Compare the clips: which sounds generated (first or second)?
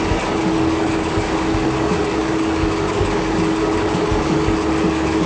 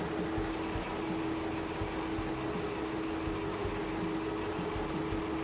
first